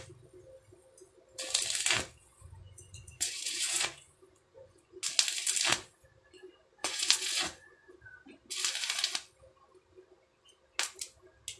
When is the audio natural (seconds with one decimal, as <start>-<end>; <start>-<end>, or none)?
0.0-2.2; 5.0-6.8; 7.9-11.6